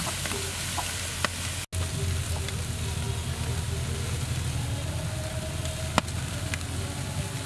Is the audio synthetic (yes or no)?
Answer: no